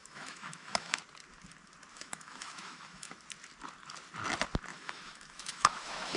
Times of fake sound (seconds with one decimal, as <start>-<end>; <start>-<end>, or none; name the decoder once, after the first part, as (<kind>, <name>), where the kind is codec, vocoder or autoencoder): 0.0-1.0 (autoencoder, DAC-VAE); 1.9-3.2; 4.7-6.2